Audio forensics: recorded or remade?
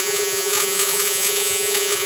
remade